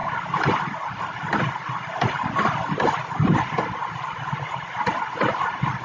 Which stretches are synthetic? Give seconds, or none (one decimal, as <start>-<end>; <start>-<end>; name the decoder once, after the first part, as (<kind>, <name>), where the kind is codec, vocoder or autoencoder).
none